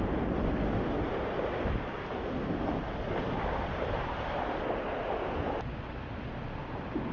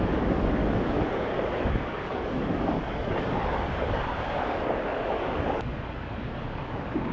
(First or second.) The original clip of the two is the first